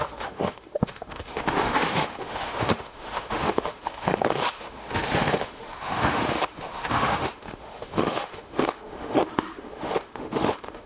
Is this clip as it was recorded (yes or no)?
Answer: no